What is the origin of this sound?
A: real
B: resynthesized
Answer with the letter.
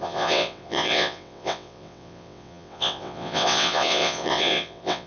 B